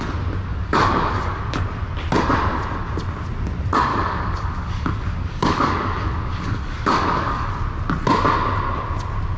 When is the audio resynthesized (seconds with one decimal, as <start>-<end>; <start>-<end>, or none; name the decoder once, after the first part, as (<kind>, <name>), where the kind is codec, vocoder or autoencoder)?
0.5-1.4 (codec, DAC); 3.9-7.5